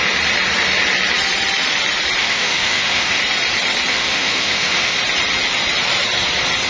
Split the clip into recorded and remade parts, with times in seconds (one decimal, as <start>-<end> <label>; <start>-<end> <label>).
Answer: 0.0-2.2 recorded; 2.2-3.2 remade; 3.2-3.9 recorded; 3.9-5.0 remade; 5.0-6.7 recorded